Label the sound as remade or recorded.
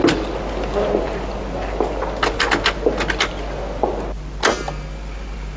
recorded